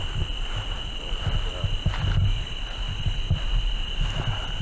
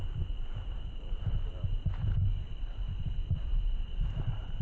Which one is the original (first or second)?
first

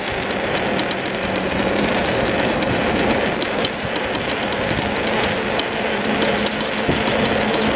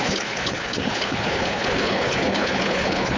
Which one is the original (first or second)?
first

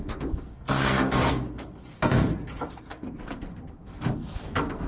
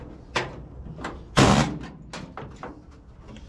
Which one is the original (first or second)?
second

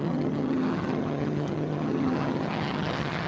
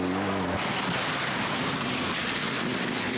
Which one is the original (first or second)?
second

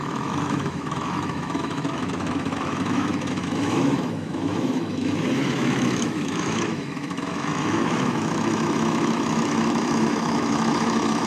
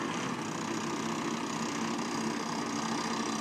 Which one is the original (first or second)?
second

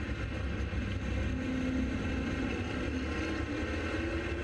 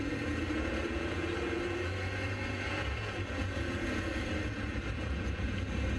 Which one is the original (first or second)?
first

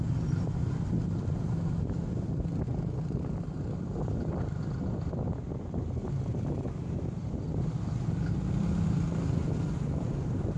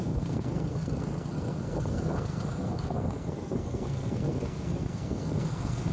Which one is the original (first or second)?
first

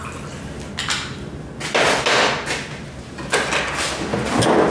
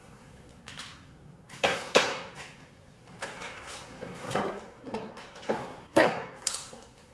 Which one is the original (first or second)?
first